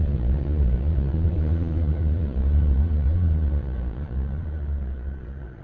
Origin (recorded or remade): remade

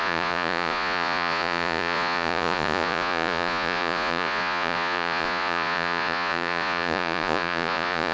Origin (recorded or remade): remade